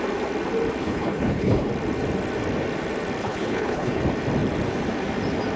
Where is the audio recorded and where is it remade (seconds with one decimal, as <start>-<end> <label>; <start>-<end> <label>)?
0.0-0.8 recorded; 0.8-1.7 remade; 1.7-3.2 recorded; 3.2-4.0 remade; 4.0-5.6 recorded